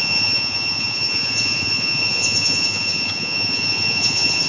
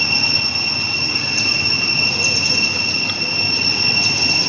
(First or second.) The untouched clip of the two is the second